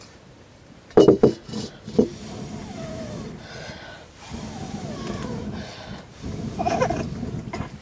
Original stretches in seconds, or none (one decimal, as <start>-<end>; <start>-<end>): 2.1-3.6